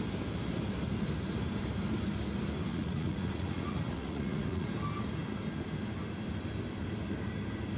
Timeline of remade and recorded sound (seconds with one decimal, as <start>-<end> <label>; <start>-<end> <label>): 0.0-2.7 recorded; 2.7-4.7 remade; 4.7-7.8 recorded